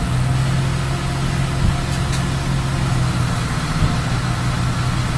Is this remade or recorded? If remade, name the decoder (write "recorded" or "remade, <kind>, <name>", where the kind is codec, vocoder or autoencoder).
recorded